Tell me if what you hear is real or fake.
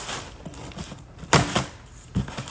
real